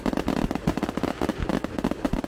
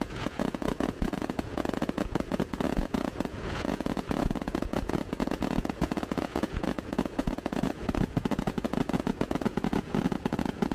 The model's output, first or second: second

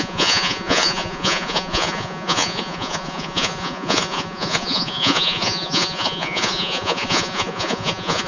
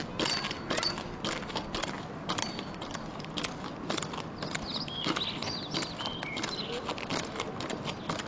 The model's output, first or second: first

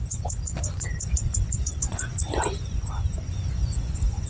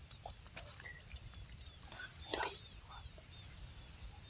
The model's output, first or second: first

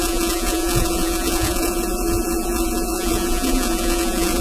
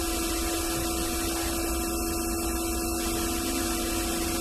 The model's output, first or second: first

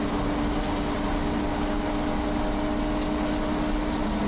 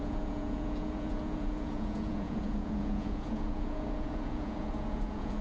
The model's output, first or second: second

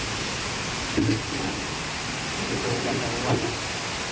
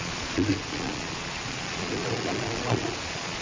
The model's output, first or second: second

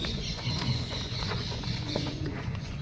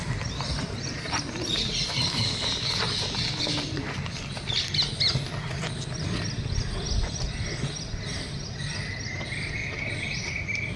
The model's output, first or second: first